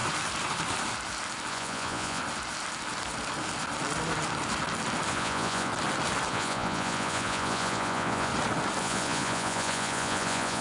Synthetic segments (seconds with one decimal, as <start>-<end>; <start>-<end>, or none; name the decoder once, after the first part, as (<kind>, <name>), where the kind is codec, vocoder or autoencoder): 1.5-2.2 (vocoder, Vocos); 5.1-5.7; 6.3-8.3; 8.8-10.6